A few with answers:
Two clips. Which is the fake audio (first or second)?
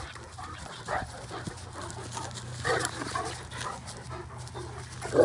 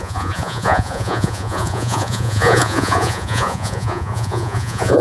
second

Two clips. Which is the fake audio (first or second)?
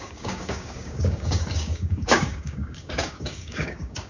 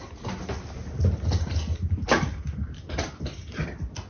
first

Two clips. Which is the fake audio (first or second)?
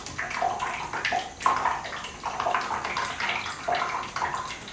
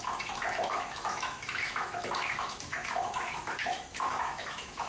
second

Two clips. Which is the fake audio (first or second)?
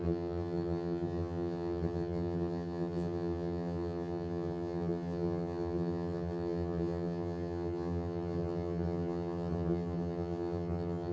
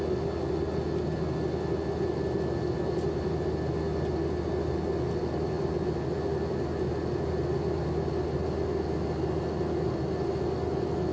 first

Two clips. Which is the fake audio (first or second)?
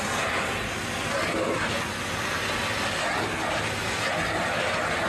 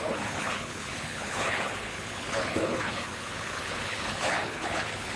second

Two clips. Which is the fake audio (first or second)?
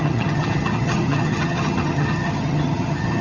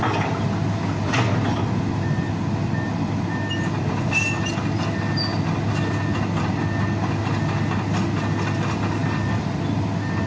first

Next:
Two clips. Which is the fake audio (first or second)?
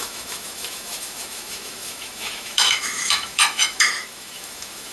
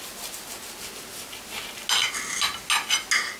first